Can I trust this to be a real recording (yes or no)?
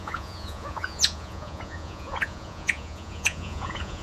no